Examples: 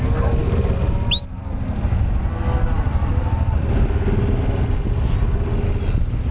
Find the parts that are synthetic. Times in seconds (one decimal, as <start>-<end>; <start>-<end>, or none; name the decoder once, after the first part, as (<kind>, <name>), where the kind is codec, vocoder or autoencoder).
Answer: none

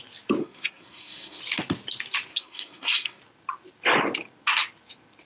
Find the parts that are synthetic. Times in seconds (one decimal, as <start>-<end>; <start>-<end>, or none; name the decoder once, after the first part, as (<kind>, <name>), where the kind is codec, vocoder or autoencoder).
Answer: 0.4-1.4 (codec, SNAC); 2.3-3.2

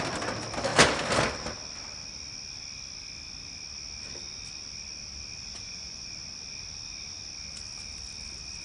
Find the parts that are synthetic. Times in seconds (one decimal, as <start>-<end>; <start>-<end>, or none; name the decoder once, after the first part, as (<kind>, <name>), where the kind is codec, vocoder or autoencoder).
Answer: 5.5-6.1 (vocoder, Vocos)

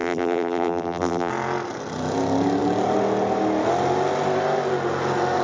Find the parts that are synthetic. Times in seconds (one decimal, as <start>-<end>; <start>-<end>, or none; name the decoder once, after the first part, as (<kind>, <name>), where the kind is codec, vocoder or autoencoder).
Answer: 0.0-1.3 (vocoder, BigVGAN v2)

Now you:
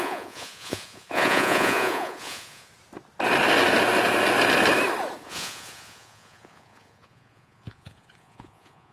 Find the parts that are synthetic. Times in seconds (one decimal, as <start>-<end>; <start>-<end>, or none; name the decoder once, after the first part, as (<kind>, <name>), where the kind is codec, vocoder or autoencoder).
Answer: 0.0-2.7 (vocoder, Vocos); 5.2-8.9